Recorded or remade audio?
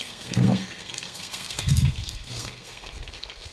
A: remade